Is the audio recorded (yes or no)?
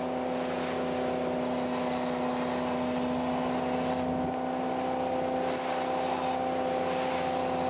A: yes